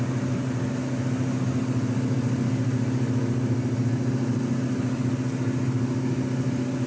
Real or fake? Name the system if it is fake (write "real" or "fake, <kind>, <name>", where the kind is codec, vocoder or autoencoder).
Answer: real